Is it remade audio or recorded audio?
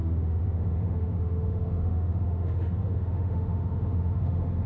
remade